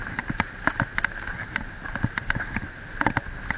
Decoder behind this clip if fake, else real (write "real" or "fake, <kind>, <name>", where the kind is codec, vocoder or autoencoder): real